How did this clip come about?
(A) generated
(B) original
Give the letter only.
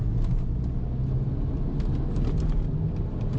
B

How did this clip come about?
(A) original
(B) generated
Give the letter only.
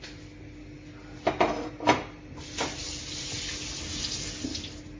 A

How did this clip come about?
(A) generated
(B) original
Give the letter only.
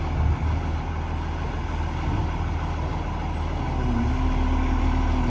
B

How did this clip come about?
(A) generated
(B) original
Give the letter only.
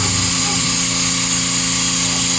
B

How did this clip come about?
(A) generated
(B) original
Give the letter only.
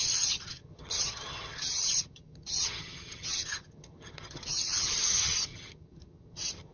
A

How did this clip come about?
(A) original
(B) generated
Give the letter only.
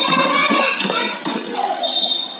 B